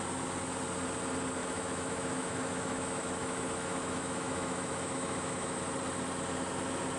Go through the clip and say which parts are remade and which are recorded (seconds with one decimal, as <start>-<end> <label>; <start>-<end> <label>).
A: 0.0-1.4 recorded; 1.4-5.6 remade; 5.6-7.0 recorded